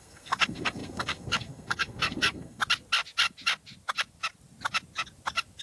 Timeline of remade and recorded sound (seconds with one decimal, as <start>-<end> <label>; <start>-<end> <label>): 0.0-2.6 remade; 2.6-5.6 recorded